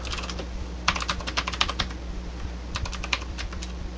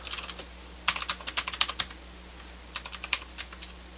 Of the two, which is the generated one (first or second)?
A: first